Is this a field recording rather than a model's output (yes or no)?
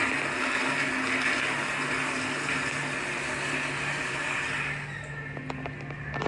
yes